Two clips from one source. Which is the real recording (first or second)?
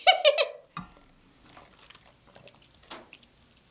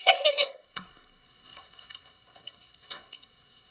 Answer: first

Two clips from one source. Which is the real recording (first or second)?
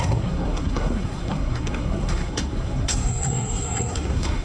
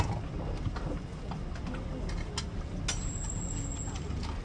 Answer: second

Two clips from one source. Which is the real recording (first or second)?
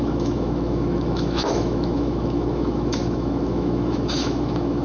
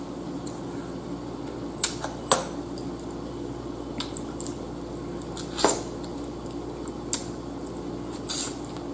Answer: second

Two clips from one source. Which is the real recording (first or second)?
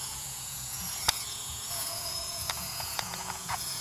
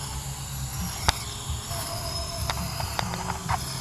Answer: second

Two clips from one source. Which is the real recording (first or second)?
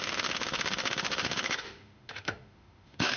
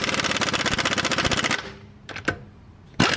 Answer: second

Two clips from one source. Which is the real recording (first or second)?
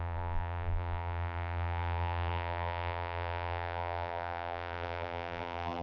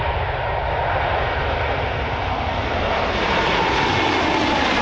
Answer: second